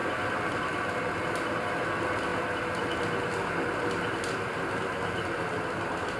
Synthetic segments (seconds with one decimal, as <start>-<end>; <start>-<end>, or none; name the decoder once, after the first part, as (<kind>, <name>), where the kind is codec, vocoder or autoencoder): none